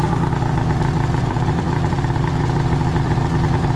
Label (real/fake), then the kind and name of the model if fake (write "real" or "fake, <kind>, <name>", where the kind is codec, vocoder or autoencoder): fake, vocoder, BigVGAN v2